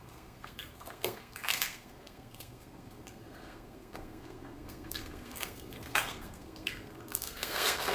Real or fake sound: fake